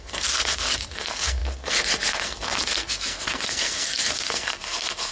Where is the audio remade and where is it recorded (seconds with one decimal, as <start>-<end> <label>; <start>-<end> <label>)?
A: 0.0-5.1 remade